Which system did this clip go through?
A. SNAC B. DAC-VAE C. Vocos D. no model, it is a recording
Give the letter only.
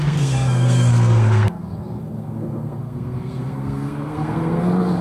A